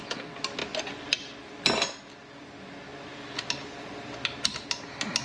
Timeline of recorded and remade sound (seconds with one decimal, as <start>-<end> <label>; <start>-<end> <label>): 0.0-5.2 recorded